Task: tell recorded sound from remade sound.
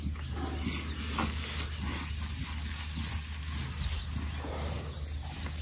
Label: recorded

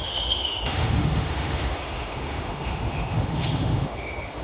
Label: remade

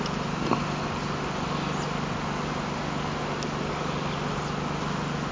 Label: recorded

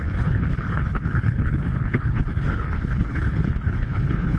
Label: remade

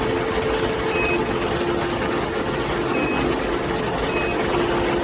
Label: recorded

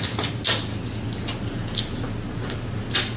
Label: recorded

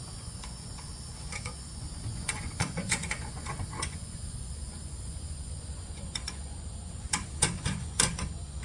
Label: remade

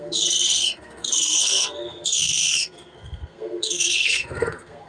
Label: remade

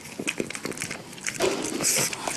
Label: recorded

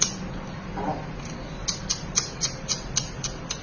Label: recorded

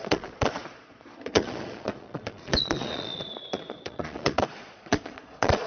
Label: remade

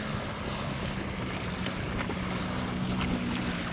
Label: recorded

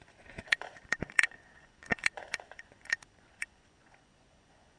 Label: remade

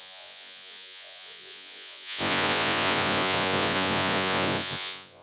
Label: remade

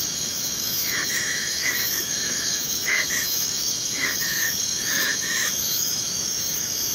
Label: remade